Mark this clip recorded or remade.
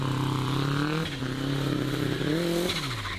recorded